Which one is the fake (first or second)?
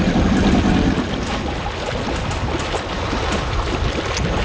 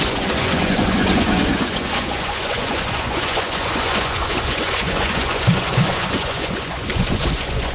second